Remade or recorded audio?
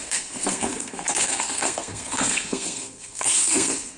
remade